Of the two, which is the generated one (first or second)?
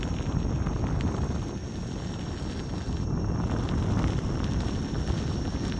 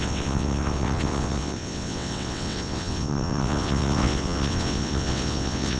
second